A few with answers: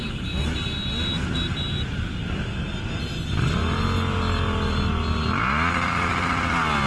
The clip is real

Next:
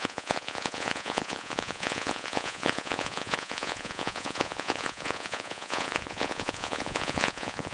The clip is fake